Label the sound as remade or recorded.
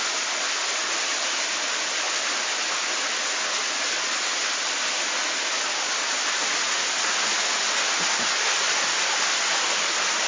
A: recorded